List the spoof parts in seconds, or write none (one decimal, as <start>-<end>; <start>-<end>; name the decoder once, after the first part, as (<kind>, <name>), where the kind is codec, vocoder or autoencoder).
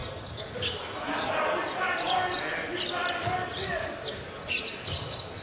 0.0-1.3 (vocoder, BigVGAN v2)